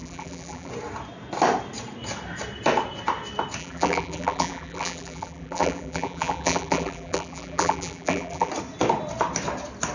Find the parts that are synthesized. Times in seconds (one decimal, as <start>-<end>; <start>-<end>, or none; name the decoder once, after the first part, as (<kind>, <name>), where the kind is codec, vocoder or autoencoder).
0.0-0.7 (vocoder, BigVGAN v2); 3.6-8.5